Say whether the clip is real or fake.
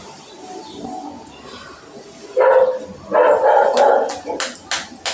real